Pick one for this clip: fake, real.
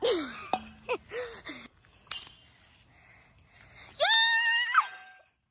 real